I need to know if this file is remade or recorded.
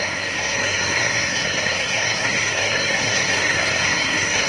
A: remade